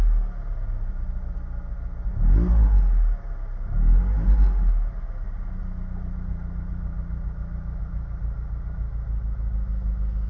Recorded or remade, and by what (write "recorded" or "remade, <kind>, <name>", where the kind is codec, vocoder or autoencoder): recorded